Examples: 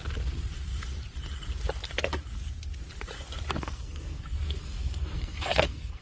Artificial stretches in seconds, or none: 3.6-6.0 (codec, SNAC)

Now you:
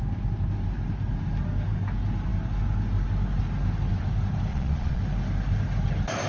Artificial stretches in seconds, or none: 4.5-5.0 (vocoder, Vocos)

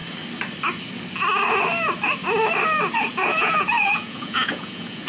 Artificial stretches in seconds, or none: 3.1-5.1 (vocoder, Vocos)

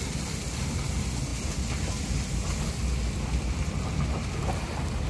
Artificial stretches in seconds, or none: none

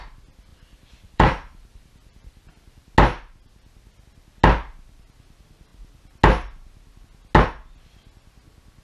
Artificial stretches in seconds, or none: 0.5-2.9 (vocoder, BigVGAN v2)

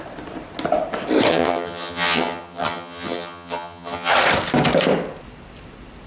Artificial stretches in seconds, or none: 1.3-4.1 (vocoder, HiFi-GAN)

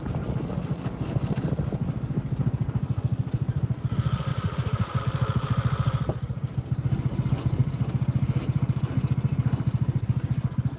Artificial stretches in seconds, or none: 4.3-5.0 (vocoder, Vocos)